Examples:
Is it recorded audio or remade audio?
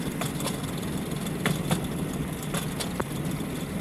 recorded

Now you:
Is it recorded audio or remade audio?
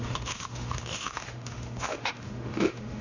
remade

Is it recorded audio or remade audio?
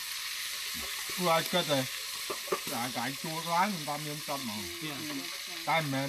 recorded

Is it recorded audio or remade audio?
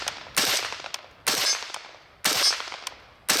recorded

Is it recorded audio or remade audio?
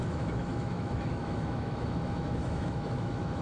remade